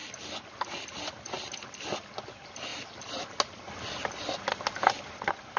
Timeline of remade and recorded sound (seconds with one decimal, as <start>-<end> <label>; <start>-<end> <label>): 0.0-5.6 recorded